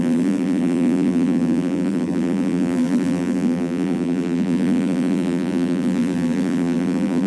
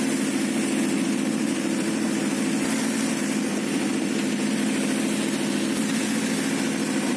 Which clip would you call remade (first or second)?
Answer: first